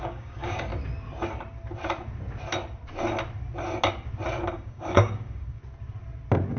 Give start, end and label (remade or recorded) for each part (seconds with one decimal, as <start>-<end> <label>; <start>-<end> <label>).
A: 0.0-0.7 remade; 0.7-4.5 recorded; 4.5-5.6 remade; 5.6-6.6 recorded